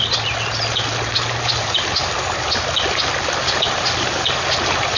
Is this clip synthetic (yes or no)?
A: no